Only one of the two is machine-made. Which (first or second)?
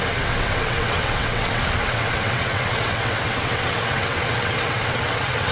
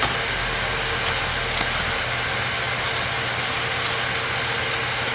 first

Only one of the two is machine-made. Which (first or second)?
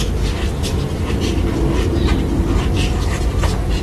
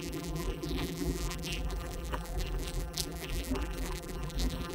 second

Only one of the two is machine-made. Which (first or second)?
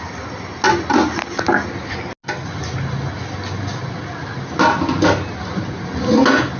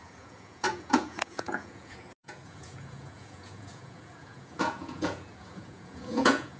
second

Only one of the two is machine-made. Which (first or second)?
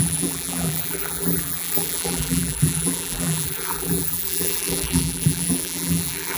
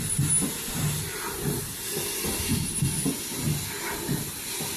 first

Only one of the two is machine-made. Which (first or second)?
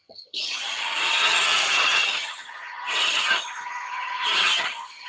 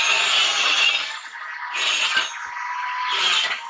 first